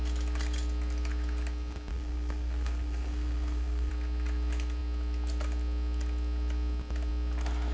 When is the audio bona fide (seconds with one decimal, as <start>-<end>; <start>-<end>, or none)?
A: 0.0-1.9; 3.9-7.7